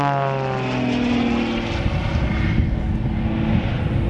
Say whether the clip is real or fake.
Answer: real